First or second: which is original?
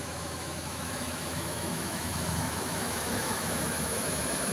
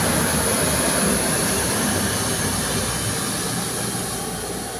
second